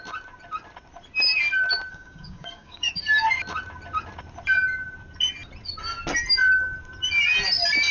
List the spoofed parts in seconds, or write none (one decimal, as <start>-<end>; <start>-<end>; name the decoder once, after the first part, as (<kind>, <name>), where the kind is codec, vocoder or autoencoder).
1.9-2.9 (codec, DAC)

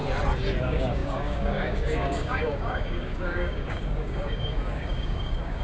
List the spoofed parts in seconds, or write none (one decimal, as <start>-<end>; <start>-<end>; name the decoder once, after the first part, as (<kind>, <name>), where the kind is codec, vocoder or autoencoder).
0.6-5.6 (codec, DAC)

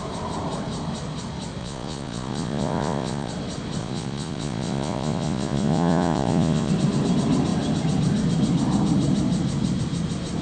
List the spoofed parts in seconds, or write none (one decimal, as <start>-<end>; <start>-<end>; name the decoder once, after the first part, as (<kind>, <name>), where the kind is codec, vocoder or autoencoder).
1.6-3.3 (vocoder, Vocos); 3.8-6.7

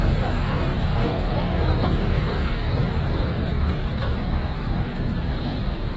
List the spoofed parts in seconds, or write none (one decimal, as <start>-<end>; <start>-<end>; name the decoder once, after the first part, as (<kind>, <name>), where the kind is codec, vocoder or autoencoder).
0.0-6.0 (codec, DAC)

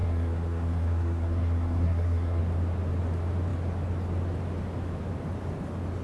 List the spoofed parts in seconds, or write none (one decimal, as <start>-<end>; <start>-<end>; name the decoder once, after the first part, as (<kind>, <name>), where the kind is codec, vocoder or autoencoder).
0.0-2.4 (codec, SNAC)

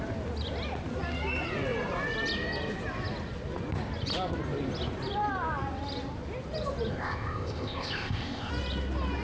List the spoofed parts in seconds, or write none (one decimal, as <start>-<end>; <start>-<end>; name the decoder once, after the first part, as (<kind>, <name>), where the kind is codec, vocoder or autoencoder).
6.9-8.5 (codec, ZipCodec)

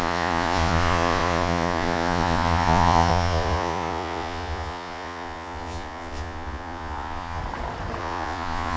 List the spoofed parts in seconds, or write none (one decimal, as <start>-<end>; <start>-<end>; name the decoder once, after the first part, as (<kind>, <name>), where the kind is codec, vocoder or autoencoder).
0.0-7.4 (vocoder, Vocos); 8.0-8.8

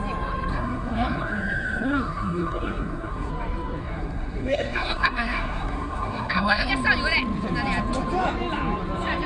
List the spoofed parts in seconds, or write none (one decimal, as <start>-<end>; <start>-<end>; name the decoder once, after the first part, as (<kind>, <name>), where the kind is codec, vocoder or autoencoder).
0.5-3.3 (codec, SNAC); 3.8-6.7